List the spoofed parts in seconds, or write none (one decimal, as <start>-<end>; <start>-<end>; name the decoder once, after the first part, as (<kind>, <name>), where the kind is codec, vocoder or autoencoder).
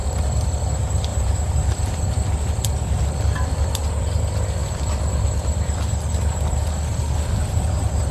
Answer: 1.1-2.6 (vocoder, BigVGAN v2)